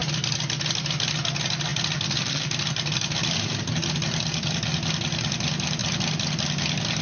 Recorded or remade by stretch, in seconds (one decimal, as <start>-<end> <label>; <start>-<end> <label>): 0.0-7.0 recorded